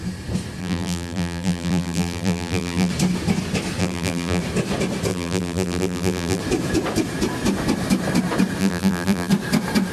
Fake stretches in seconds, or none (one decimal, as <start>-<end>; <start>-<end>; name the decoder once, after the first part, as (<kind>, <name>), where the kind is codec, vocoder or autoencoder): 0.6-2.9 (vocoder, BigVGAN v2); 3.8-4.4; 5.1-6.4; 8.6-9.3